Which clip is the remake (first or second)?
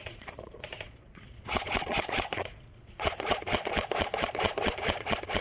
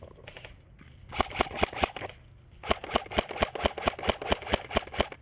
first